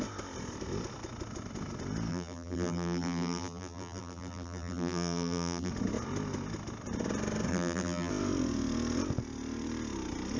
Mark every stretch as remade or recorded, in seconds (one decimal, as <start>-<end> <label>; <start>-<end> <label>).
0.0-2.1 recorded; 2.1-5.7 remade; 5.7-7.5 recorded; 7.5-8.1 remade; 8.1-10.4 recorded